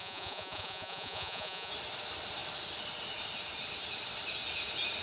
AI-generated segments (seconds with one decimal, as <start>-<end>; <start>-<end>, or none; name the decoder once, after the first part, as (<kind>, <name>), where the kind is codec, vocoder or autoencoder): 0.0-1.7 (vocoder, Vocos)